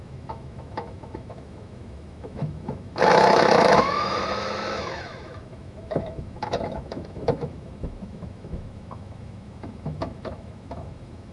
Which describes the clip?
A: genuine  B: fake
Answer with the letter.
B